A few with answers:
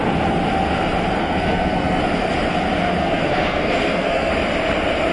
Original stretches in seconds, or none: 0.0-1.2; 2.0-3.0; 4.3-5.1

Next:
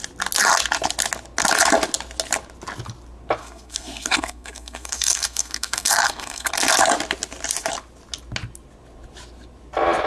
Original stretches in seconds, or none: 0.0-3.4; 6.5-10.1

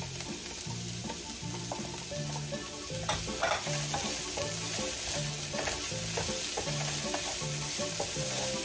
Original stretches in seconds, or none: 0.0-8.6

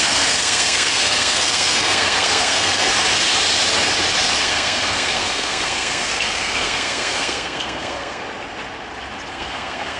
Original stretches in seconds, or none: 2.9-4.4; 8.2-9.3

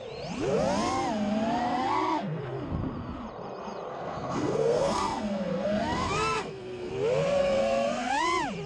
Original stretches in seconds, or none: 0.0-1.6; 2.4-3.9; 6.9-7.4; 8.1-8.7

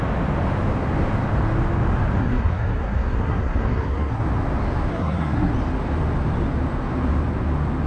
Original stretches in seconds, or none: 0.0-2.2; 4.2-4.9; 5.5-7.9

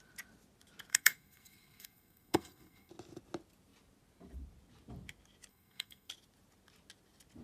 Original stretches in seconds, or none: 0.0-0.9; 2.9-5.5; 6.1-7.4

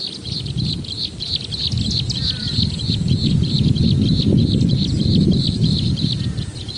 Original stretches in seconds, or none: 0.0-6.8